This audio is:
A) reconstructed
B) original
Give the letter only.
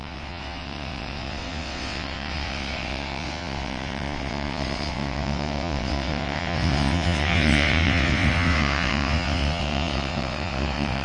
A